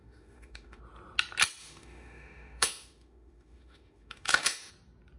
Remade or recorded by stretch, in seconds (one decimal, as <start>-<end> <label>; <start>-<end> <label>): 0.0-0.8 remade; 0.8-1.6 recorded; 1.6-4.7 remade; 4.7-5.2 recorded